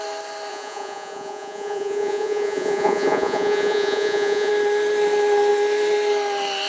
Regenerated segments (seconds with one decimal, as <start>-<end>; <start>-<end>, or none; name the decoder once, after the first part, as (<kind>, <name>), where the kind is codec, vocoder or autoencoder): 0.5-4.5 (vocoder, Vocos)

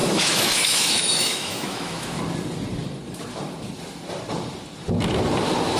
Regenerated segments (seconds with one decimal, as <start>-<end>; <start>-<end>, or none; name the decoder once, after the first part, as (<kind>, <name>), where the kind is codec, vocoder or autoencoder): 0.0-2.2 (autoencoder, DAC-VAE)

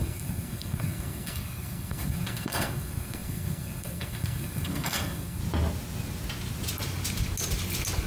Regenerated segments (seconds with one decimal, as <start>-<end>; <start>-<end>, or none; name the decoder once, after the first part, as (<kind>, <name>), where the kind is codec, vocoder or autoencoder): 0.0-5.4 (codec, SNAC)